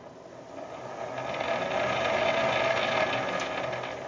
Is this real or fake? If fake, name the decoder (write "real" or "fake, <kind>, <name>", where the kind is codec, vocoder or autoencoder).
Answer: real